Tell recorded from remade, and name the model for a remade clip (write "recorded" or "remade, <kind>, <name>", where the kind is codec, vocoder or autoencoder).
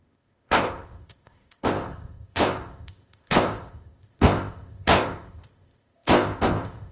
remade, codec, ZipCodec